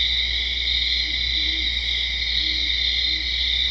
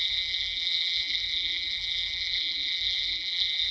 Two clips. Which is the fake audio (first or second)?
second